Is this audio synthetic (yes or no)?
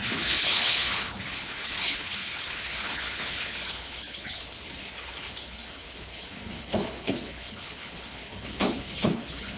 yes